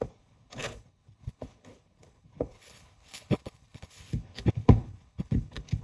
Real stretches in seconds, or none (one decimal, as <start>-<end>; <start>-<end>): none